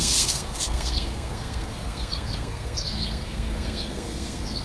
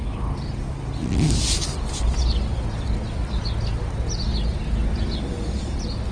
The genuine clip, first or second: second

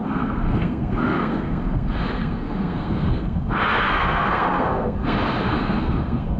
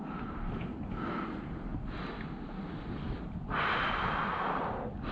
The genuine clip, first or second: second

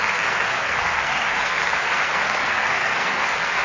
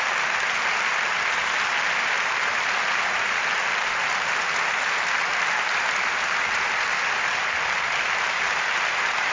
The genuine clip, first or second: second